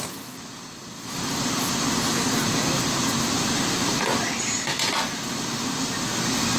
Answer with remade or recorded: recorded